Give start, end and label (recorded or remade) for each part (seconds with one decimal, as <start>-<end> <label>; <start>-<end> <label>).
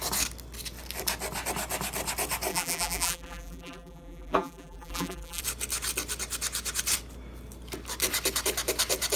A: 0.0-2.5 recorded; 2.5-5.4 remade; 5.4-9.2 recorded